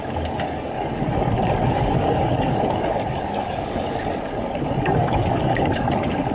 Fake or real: fake